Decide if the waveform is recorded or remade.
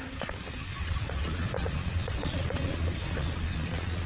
remade